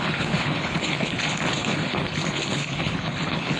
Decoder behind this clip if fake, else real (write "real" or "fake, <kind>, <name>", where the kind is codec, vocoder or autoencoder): fake, codec, HILCodec